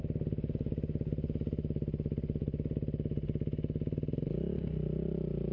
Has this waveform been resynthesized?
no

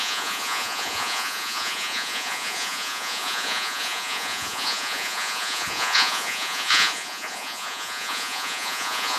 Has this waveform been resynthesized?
yes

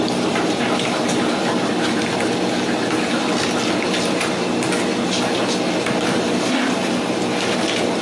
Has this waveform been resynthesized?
no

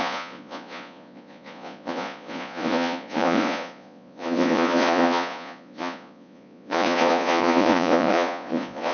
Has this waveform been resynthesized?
yes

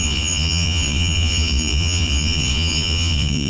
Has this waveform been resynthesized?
yes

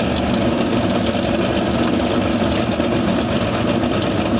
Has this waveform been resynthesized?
no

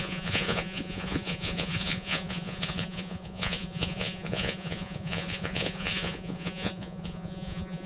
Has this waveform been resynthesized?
yes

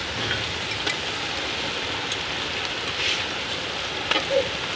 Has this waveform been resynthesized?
no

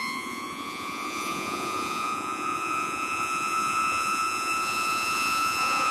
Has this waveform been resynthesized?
yes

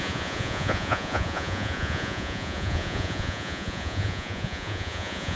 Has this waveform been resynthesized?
yes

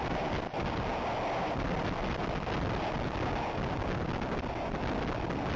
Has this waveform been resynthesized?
no